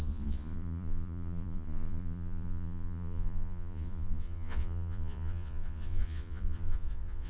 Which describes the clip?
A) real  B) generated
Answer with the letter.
B